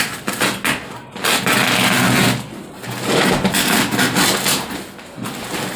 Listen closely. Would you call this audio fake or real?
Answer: real